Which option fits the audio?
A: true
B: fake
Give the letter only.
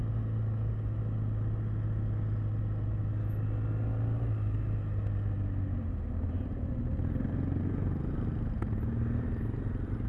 A